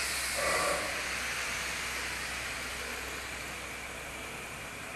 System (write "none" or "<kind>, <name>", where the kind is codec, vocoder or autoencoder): none